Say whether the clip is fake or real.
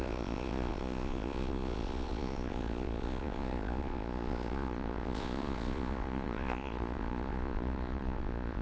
fake